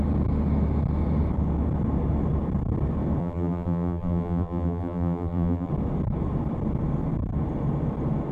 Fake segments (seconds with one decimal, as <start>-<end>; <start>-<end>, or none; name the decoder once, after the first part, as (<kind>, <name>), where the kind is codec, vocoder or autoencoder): 3.2-5.7 (vocoder, BigVGAN v2)